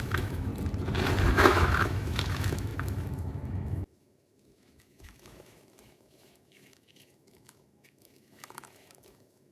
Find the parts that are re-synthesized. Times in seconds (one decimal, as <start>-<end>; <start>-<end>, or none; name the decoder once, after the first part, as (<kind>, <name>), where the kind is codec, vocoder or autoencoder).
0.0-0.5 (autoencoder, DAC-VAE); 1.3-9.5